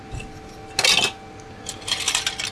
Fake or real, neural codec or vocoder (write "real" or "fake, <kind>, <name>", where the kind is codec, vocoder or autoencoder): real